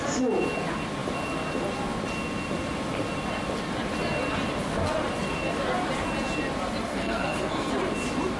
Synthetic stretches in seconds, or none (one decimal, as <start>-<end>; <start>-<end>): 6.9-7.7